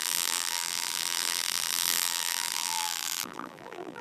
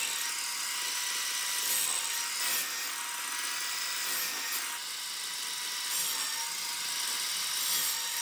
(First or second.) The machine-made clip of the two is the first